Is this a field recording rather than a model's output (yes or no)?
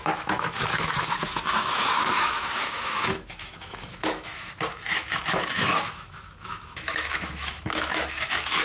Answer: no